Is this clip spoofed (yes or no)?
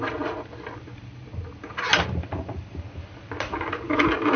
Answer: no